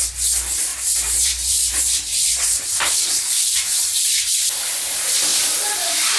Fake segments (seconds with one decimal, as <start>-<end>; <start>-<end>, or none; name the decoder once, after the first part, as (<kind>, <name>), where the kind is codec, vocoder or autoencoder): 0.7-4.3 (vocoder, BigVGAN v2)